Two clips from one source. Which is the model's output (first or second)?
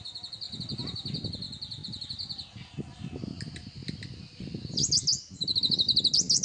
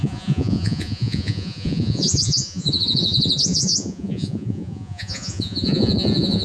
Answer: second